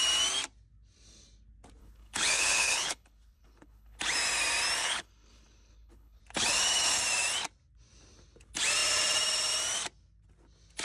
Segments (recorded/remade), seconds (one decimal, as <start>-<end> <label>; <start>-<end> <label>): 0.0-1.8 recorded; 1.8-4.0 remade; 4.0-4.8 recorded; 4.8-6.2 remade; 6.2-10.8 recorded